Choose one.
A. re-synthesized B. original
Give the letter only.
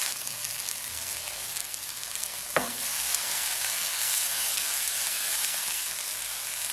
A